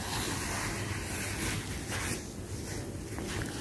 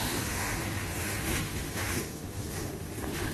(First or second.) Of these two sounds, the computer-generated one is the second